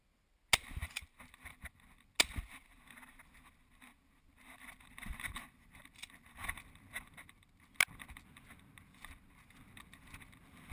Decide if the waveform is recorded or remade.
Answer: recorded